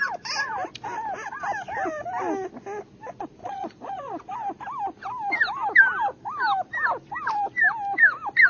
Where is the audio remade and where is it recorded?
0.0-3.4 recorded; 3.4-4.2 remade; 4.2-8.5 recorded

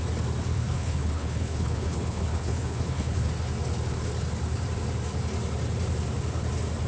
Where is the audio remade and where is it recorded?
0.0-0.5 recorded; 0.5-3.3 remade; 3.3-6.9 recorded

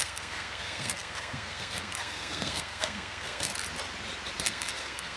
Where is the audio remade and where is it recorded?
0.0-3.5 remade; 3.5-4.4 recorded; 4.4-5.2 remade

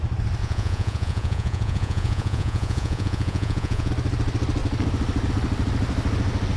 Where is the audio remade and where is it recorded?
0.0-0.4 recorded; 0.4-3.9 remade; 3.9-6.6 recorded

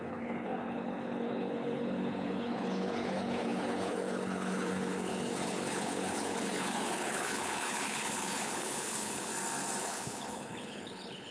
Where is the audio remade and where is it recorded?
0.0-9.3 remade; 9.3-9.8 recorded; 9.8-11.3 remade

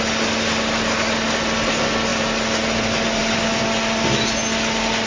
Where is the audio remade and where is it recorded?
0.0-5.1 recorded

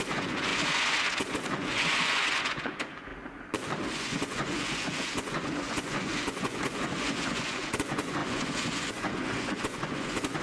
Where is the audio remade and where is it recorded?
0.0-3.1 remade; 3.1-3.9 recorded; 3.9-10.4 remade

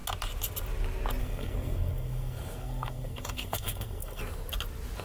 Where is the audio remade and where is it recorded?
0.0-1.2 recorded; 1.2-4.2 remade; 4.2-5.0 recorded